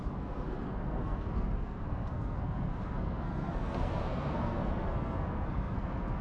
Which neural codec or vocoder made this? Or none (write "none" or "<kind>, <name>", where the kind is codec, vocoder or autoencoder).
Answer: codec, SNAC